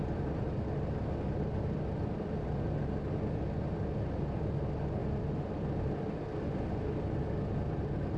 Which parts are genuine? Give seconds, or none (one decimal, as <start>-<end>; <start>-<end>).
0.0-8.2